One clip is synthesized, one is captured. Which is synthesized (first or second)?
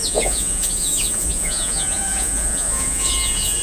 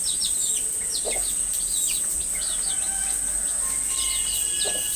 first